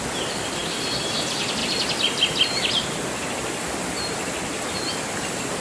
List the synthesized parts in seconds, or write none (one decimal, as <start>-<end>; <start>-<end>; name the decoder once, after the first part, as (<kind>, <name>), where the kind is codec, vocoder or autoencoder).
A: none